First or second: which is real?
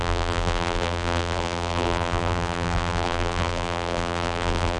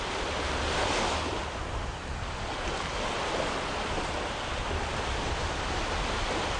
second